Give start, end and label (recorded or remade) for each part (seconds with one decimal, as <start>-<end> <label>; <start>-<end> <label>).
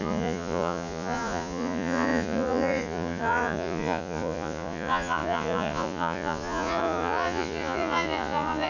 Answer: 0.0-8.7 remade